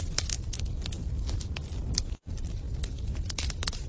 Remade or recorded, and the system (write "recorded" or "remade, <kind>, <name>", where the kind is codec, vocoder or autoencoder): recorded